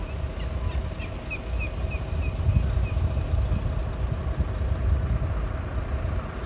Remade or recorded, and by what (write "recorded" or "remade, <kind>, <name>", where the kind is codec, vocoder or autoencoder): recorded